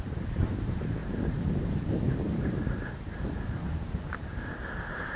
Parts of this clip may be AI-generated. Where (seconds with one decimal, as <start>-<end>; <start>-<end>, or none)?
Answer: 0.0-5.2